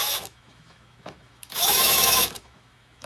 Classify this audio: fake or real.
fake